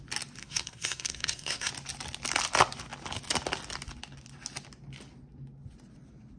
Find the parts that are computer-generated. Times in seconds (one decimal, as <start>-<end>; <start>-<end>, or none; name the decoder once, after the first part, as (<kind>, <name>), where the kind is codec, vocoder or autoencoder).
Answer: 0.4-1.7 (codec, SNAC)